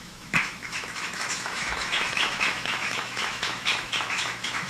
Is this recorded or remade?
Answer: remade